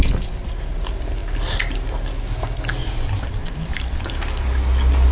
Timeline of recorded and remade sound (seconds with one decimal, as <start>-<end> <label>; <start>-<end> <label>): 0.0-2.8 recorded; 2.8-4.1 remade; 4.1-5.1 recorded